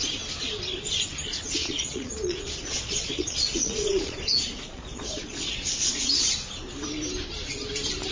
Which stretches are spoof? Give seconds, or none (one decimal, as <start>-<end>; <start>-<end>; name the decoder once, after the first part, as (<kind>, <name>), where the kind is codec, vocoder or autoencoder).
1.6-6.2 (vocoder, Vocos)

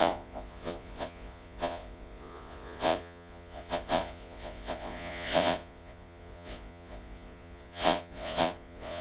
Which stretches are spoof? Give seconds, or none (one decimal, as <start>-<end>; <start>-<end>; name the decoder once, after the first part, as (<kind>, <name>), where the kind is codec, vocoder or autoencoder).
0.0-9.0 (vocoder, Vocos)

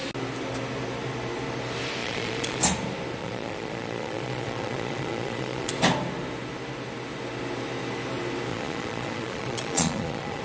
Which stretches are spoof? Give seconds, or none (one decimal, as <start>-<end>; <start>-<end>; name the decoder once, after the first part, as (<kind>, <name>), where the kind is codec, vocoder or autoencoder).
2.0-2.6 (vocoder, Vocos); 3.2-5.7; 8.5-10.4